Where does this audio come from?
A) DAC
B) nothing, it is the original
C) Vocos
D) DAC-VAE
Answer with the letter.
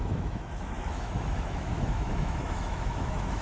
D